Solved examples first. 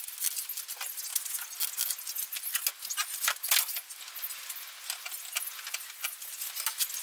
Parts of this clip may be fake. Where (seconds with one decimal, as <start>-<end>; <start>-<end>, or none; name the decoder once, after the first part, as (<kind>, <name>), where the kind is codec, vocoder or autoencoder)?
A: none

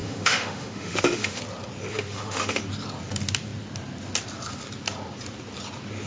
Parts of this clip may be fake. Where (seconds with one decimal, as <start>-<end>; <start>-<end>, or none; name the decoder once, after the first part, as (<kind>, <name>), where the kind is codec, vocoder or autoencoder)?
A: 0.0-1.4 (autoencoder, DAC-VAE); 1.9-2.6

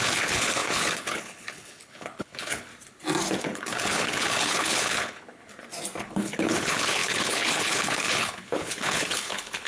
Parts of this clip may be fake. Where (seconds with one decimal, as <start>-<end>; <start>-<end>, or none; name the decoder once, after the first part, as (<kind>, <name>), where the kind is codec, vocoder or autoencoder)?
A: 0.0-2.7 (codec, HILCodec); 3.4-5.5; 6.0-9.7

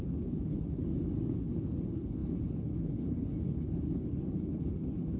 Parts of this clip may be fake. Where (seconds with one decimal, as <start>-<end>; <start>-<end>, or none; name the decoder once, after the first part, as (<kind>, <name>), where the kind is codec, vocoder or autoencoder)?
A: 0.0-0.8 (codec, HILCodec); 1.3-5.2